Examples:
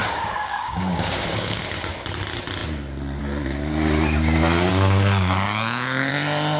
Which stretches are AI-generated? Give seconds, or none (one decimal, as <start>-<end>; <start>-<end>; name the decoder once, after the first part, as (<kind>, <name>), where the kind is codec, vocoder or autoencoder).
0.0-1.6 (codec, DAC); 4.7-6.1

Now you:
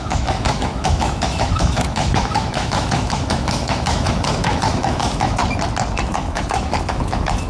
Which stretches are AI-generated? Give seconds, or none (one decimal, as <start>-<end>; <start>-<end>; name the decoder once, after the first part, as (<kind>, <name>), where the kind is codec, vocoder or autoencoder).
0.0-5.4 (autoencoder, DAC-VAE); 6.0-7.5

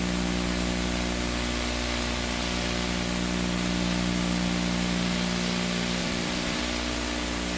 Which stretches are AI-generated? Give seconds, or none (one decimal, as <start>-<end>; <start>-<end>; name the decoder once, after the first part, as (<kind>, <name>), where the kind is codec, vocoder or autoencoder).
6.0-6.6 (vocoder, BigVGAN v2)